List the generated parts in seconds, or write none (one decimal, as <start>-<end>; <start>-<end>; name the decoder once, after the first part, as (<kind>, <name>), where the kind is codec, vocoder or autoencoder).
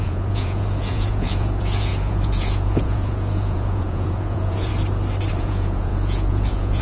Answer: 0.0-4.7 (vocoder, Vocos); 5.3-6.8